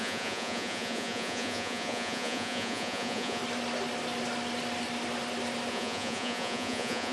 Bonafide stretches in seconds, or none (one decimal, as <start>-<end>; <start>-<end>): 3.4-5.7